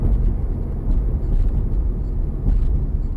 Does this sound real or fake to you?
real